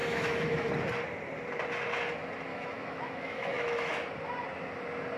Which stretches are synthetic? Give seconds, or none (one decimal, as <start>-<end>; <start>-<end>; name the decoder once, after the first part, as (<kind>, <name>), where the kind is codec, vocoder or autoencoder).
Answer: 0.0-0.7 (autoencoder, DAC-VAE); 2.5-3.9